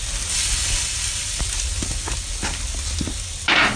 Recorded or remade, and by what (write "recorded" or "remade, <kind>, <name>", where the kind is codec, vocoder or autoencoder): recorded